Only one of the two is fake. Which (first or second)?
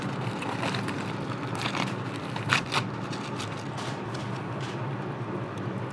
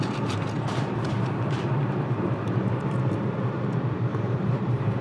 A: second